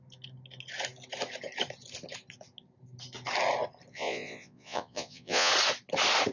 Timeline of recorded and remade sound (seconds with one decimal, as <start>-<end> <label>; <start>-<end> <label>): 0.0-3.9 recorded; 3.9-5.5 remade; 5.5-6.3 recorded